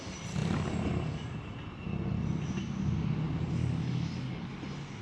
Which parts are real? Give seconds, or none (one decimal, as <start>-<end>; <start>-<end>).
0.0-3.6; 4.5-5.0